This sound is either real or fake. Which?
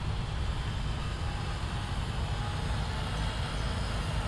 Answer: real